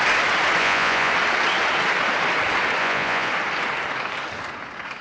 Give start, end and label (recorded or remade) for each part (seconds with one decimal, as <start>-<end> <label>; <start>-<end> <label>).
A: 0.0-0.6 recorded; 0.6-1.1 remade; 1.1-2.8 recorded; 2.8-3.3 remade; 3.3-5.0 recorded